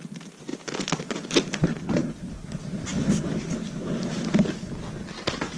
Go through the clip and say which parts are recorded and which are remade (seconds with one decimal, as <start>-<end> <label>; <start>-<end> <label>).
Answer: 0.0-5.6 recorded